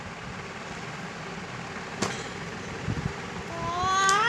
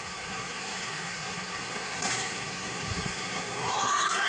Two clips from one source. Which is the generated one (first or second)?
second